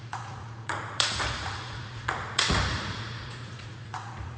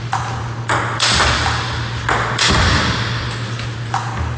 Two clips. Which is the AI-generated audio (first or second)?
first